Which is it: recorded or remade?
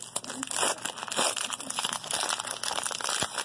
recorded